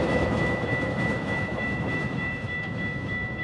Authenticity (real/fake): fake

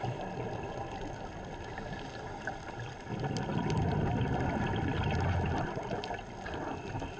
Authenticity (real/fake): real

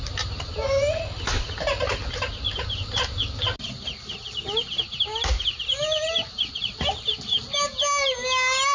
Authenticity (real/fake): real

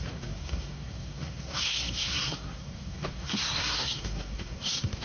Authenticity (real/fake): fake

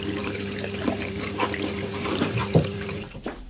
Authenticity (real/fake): fake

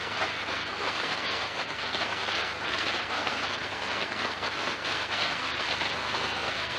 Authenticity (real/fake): fake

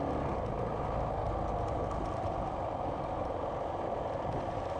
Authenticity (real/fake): real